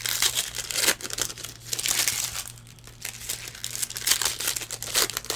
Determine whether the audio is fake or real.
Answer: real